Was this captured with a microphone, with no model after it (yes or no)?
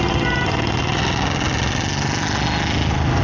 yes